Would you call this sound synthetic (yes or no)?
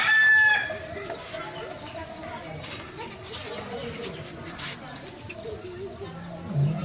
no